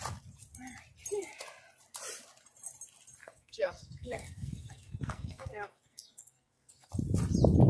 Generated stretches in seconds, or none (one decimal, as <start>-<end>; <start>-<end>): 3.2-6.9

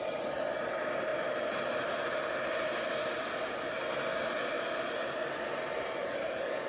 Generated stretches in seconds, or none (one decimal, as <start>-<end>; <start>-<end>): none

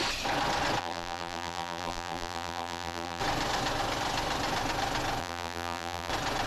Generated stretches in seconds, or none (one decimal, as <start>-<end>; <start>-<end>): 0.8-3.2; 5.2-6.1

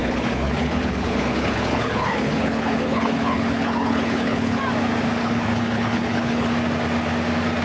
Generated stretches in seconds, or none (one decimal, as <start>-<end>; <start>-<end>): 0.0-4.6; 5.2-6.5